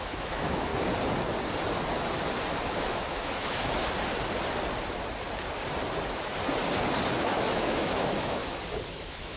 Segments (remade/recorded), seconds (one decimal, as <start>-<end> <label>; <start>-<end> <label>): 0.0-0.7 remade; 0.7-2.8 recorded; 2.8-3.8 remade; 3.8-7.2 recorded; 7.2-8.4 remade; 8.4-8.9 recorded; 8.9-9.4 remade